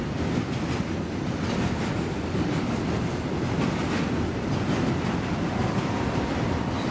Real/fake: real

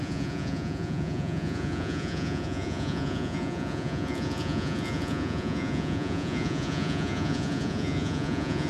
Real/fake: fake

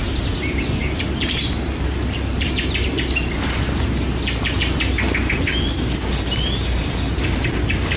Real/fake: real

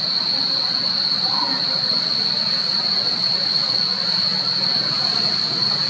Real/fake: real